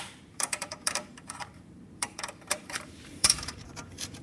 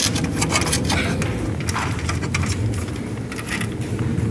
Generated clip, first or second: first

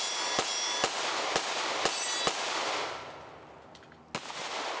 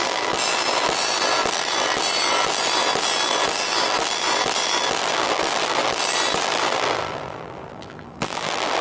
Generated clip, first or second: second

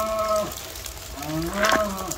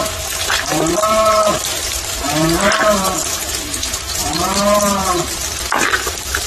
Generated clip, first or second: second